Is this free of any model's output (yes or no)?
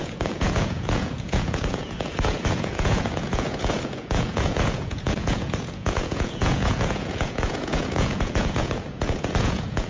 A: no